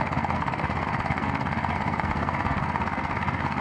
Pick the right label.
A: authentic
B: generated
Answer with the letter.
B